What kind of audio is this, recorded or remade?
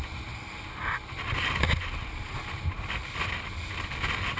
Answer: recorded